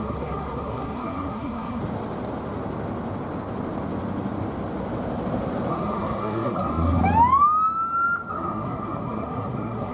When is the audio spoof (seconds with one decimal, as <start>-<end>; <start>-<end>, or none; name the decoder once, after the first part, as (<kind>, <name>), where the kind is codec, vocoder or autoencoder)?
0.0-1.8 (codec, SNAC); 5.7-7.0; 8.3-9.9